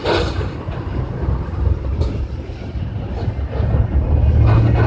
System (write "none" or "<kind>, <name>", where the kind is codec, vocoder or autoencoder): none